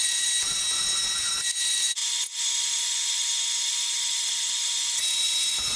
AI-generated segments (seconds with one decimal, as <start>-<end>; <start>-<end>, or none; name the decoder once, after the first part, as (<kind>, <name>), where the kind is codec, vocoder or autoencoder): 0.0-5.8 (vocoder, BigVGAN v2)